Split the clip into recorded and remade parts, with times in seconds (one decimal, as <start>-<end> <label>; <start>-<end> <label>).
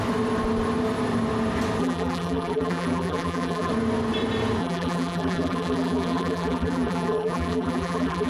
0.0-1.8 recorded; 1.8-3.7 remade; 3.7-4.6 recorded; 4.6-8.3 remade